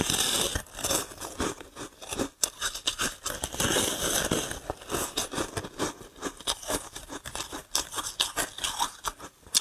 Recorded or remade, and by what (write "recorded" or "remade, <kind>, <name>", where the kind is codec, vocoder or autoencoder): recorded